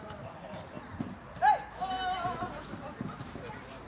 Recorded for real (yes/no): yes